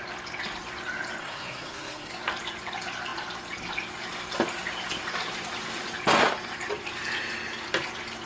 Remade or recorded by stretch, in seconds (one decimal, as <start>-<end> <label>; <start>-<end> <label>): 0.0-1.2 recorded; 1.2-2.1 remade; 2.1-8.3 recorded